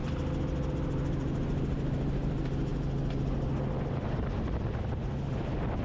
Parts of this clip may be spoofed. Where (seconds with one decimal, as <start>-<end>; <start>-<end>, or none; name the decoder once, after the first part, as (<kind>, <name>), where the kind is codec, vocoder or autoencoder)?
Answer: none